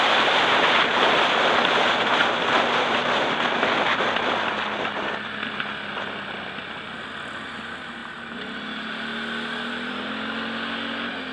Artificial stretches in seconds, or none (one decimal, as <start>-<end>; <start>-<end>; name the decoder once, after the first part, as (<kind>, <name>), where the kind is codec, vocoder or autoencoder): none